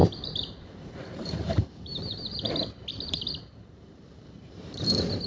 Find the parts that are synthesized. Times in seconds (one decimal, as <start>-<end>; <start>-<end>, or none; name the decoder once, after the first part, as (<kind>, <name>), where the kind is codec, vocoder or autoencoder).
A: 0.0-2.5 (vocoder, BigVGAN v2); 2.9-4.8

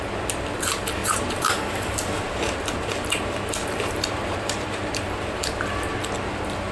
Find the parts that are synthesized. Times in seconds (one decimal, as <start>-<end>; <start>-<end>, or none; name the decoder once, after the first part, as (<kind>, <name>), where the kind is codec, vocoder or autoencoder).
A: 1.0-5.0 (vocoder, BigVGAN v2)